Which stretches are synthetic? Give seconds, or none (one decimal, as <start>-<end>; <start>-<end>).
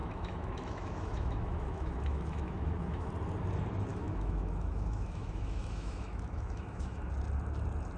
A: 0.0-3.1; 3.9-7.1